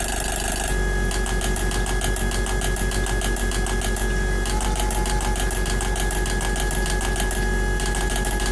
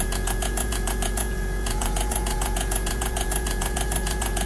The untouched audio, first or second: first